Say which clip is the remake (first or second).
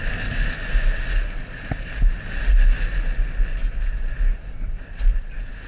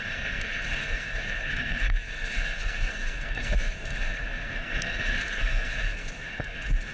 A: second